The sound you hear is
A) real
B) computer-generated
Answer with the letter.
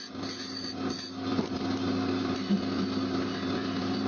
A